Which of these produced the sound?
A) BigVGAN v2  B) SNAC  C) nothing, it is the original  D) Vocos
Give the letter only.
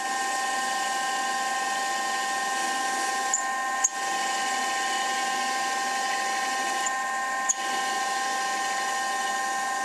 C